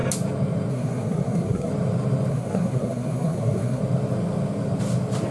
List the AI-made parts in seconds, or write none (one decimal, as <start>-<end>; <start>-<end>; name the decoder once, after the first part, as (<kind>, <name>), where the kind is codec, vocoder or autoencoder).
0.7-1.7 (codec, SNAC); 2.3-3.8